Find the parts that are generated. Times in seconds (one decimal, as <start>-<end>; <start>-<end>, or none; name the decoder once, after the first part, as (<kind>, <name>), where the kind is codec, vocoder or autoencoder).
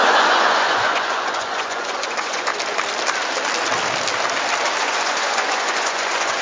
0.0-2.5 (vocoder, Vocos); 4.8-6.4